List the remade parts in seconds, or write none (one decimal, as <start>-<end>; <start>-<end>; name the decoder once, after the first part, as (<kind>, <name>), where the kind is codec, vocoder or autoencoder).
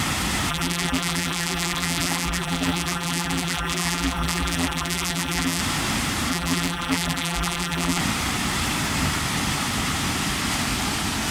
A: 0.5-5.6 (vocoder, BigVGAN v2); 6.3-8.0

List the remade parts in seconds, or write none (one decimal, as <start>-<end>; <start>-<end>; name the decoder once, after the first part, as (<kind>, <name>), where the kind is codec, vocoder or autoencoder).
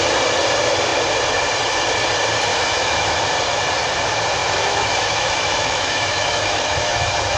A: 2.5-3.2 (autoencoder, DAC-VAE); 4.4-7.4